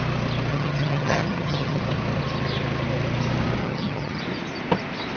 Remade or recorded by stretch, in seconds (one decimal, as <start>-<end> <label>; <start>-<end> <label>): 0.0-0.5 recorded; 0.5-1.8 remade; 1.8-3.6 recorded; 3.6-4.2 remade; 4.2-5.2 recorded